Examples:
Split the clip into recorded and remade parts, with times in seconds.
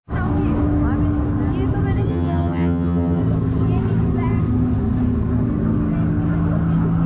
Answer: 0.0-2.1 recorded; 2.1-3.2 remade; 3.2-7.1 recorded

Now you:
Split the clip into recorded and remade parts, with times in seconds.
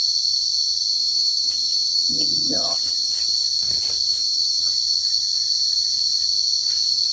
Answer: 0.0-0.9 recorded; 0.9-3.2 remade; 3.2-4.1 recorded; 4.1-4.7 remade; 4.7-7.1 recorded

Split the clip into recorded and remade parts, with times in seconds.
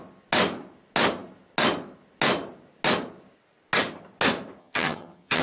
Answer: 0.0-4.6 recorded; 4.6-5.4 remade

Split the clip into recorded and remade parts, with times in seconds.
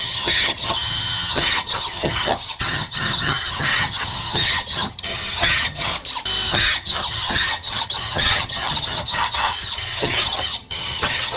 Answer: 0.0-5.9 remade; 5.9-6.5 recorded; 6.5-11.4 remade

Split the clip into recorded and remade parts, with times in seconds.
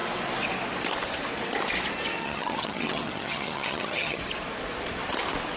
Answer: 0.0-2.2 recorded; 2.2-4.2 remade; 4.2-5.6 recorded